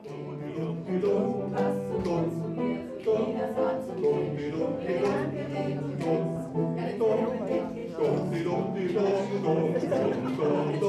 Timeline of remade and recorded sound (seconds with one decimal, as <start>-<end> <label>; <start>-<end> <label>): 0.0-10.9 recorded